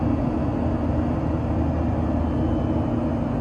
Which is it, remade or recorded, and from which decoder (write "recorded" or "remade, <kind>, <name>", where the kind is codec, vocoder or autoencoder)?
recorded